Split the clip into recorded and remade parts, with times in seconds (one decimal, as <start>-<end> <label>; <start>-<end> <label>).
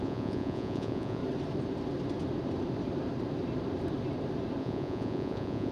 0.0-1.2 remade; 1.2-4.6 recorded; 4.6-5.7 remade